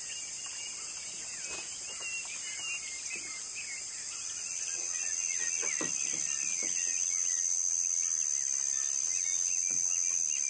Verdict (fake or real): real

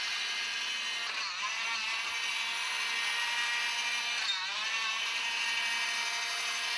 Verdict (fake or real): real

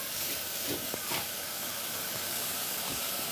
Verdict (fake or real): fake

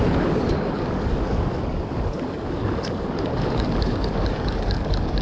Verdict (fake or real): fake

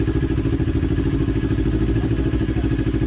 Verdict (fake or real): real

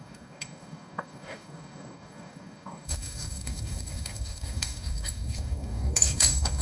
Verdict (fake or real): fake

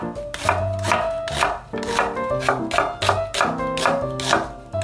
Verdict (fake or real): real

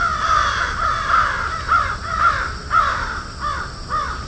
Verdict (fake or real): real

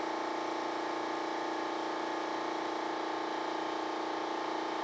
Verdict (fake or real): real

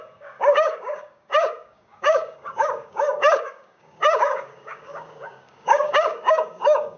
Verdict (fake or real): fake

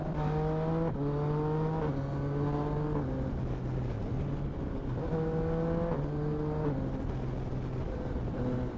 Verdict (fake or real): real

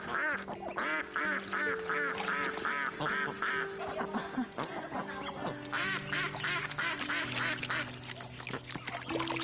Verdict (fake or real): real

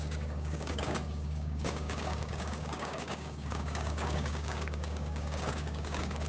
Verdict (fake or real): fake